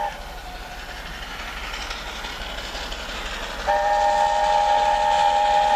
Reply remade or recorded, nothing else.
recorded